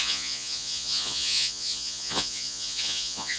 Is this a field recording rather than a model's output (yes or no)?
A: no